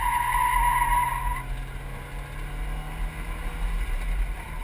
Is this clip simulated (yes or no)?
no